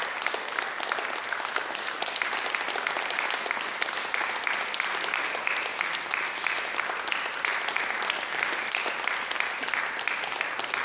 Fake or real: real